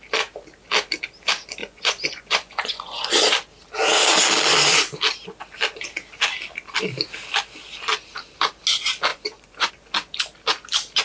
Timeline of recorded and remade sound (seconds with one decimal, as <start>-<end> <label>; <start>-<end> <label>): 0.0-1.6 recorded; 1.6-3.1 remade; 3.1-9.1 recorded; 9.1-9.7 remade; 9.7-11.0 recorded